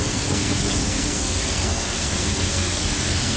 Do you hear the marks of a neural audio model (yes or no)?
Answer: yes